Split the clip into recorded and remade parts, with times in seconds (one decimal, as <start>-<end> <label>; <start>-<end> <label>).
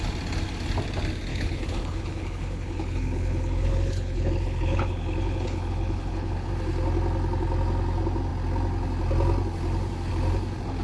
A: 0.0-1.3 recorded; 1.3-6.5 remade; 6.5-10.8 recorded